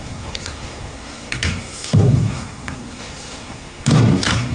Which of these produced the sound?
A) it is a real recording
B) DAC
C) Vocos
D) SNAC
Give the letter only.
D